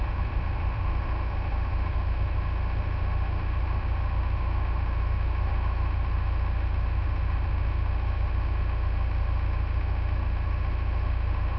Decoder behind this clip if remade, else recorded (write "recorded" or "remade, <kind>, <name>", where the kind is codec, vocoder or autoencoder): remade, autoencoder, DAC-VAE